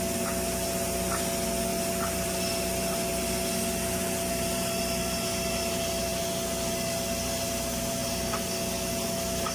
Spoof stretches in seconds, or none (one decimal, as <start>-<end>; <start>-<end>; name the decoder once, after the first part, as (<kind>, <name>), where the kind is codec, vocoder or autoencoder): none